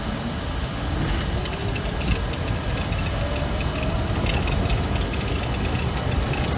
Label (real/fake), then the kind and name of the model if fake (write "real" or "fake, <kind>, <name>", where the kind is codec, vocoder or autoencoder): real